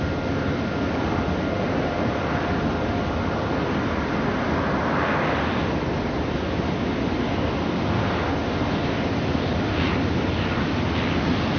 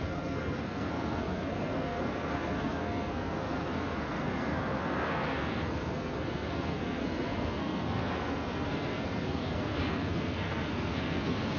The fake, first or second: second